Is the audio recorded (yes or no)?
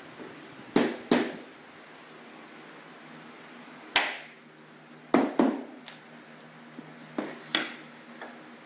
yes